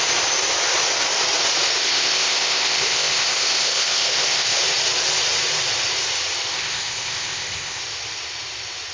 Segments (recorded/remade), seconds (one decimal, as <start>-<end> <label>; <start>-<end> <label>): 0.0-1.8 recorded; 1.8-4.6 remade; 4.6-6.5 recorded; 6.5-7.8 remade; 7.8-8.9 recorded